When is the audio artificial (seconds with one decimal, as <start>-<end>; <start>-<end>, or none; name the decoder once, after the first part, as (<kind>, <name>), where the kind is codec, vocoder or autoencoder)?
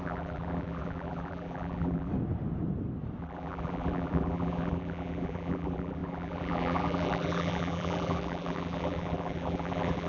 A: 0.0-2.1 (vocoder, BigVGAN v2); 3.2-10.1